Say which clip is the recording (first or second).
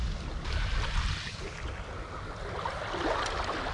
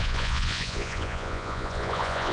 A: first